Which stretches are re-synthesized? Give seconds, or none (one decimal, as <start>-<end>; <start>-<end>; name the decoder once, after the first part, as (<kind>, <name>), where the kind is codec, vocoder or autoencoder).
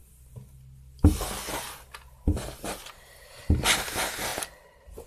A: none